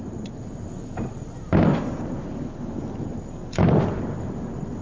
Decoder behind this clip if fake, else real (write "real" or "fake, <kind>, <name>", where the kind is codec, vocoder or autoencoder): real